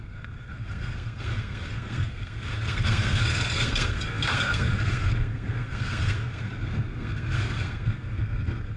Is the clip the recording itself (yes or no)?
no